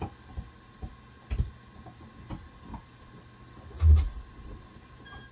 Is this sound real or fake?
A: real